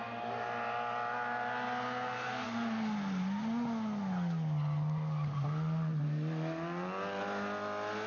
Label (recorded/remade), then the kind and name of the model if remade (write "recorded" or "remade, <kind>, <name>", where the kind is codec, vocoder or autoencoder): recorded